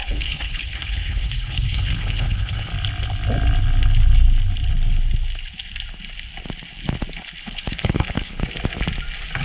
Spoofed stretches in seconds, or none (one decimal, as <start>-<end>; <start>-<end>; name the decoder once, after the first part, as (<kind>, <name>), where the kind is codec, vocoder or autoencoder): 0.0-2.7 (codec, HILCodec); 7.4-8.4